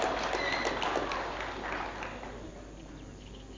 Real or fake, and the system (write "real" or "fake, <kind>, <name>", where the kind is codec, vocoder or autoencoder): real